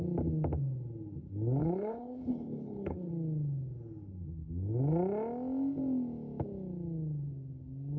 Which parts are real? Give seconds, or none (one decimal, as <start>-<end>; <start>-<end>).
0.0-1.6; 3.1-8.0